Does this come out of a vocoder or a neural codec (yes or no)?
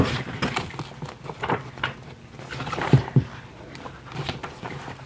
no